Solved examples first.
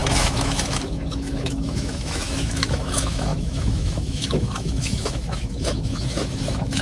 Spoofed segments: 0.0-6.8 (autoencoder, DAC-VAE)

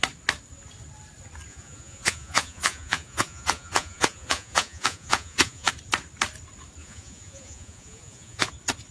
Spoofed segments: 1.5-5.7 (vocoder, Vocos); 6.8-8.5

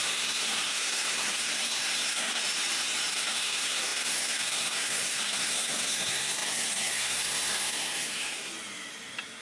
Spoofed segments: 0.0-2.4 (codec, SNAC); 3.1-8.5

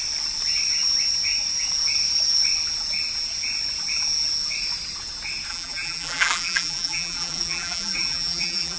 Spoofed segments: 5.5-8.8 (vocoder, BigVGAN v2)

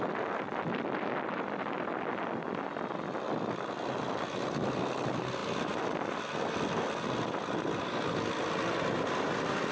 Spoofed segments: none

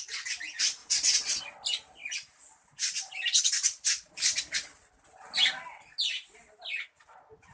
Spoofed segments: none

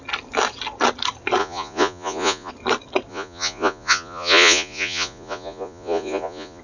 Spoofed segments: 1.4-2.5 (vocoder, Vocos); 3.1-6.6